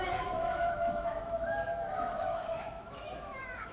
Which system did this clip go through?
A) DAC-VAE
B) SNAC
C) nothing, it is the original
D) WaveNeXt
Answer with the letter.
A